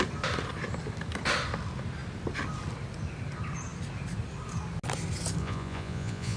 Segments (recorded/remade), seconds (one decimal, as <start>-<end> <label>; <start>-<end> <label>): 0.0-5.4 recorded; 5.4-6.4 remade